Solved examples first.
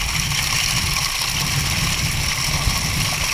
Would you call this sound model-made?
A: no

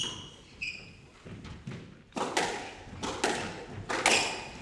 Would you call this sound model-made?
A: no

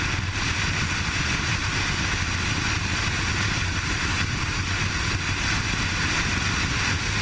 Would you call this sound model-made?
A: no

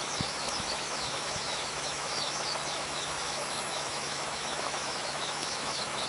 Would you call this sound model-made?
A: yes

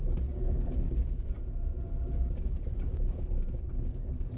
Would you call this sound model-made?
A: no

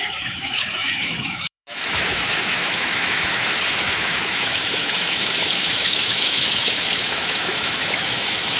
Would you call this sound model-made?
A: yes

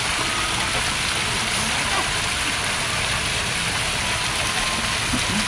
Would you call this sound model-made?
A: no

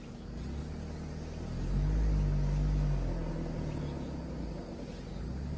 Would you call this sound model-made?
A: no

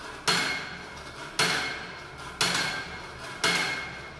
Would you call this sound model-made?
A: no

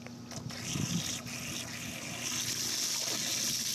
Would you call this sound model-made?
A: no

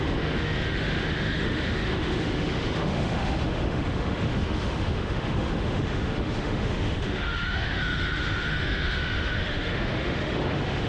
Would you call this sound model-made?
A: yes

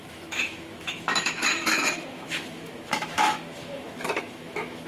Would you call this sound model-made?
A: yes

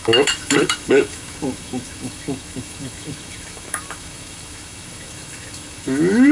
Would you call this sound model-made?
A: yes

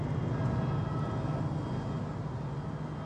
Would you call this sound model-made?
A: no